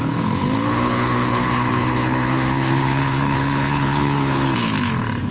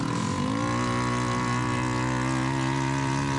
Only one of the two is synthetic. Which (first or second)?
first